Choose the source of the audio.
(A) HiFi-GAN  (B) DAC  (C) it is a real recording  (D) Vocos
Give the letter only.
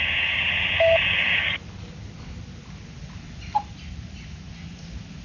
C